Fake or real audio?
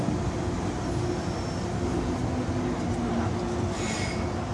real